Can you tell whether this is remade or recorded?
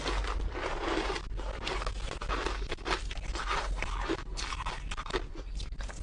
recorded